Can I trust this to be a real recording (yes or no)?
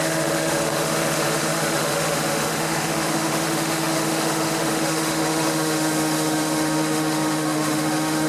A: no